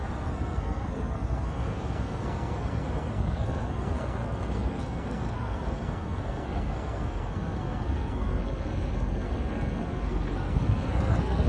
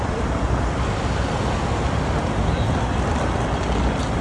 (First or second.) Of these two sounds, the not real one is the first